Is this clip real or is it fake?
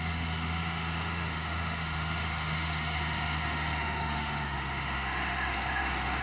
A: fake